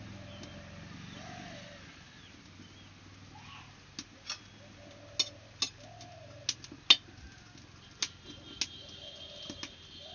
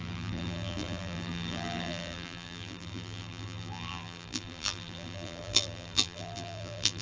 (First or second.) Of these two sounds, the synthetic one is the second